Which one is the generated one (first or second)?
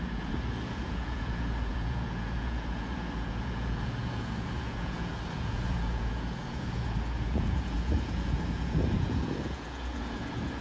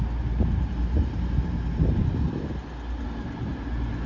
first